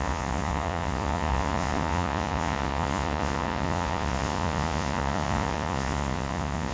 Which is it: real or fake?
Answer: fake